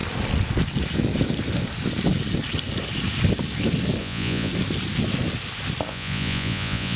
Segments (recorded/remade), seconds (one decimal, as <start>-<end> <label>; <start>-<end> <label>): 0.0-4.0 recorded; 4.0-4.5 remade; 4.5-5.9 recorded; 5.9-7.0 remade